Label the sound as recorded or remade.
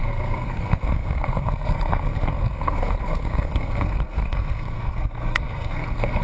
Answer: remade